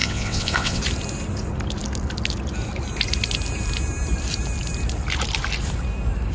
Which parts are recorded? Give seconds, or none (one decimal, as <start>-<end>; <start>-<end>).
0.8-6.3